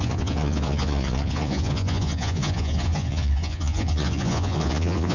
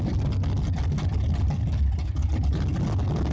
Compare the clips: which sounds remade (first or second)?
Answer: first